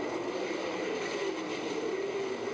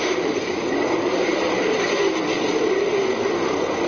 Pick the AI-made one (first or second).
second